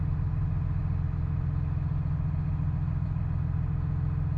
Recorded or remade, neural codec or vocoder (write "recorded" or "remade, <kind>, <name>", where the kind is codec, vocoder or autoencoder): recorded